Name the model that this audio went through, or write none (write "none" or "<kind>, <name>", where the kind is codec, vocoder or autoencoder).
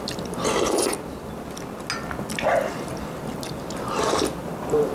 none